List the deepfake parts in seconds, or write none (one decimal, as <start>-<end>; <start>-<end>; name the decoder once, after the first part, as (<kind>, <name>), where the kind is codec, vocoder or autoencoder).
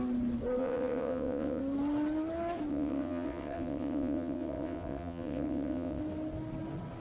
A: 0.6-1.6 (vocoder, WaveNeXt); 2.7-6.0